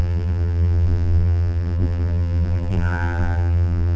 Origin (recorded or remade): remade